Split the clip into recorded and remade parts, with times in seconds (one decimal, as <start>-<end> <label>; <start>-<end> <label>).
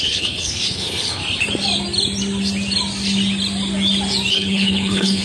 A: 0.0-1.2 remade; 1.2-4.3 recorded; 4.3-5.2 remade